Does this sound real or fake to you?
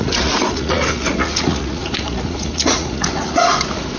fake